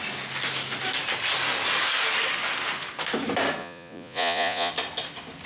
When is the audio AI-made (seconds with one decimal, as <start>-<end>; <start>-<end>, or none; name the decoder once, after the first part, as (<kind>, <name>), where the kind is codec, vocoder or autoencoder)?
3.6-4.7 (vocoder, Vocos)